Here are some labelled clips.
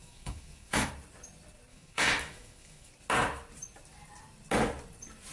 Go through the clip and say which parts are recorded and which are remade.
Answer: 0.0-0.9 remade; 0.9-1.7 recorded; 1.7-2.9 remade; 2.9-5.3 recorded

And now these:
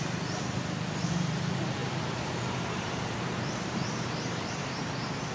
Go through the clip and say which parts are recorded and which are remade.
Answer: 0.0-1.8 recorded; 1.8-4.8 remade; 4.8-5.3 recorded

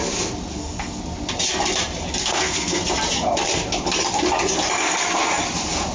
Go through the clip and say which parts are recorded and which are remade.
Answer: 0.0-0.5 recorded; 0.5-1.0 remade; 1.0-2.2 recorded; 2.2-2.8 remade; 2.8-5.9 recorded

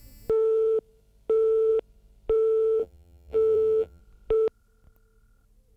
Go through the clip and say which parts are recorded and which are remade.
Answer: 0.0-2.8 recorded; 2.8-4.0 remade; 4.0-5.8 recorded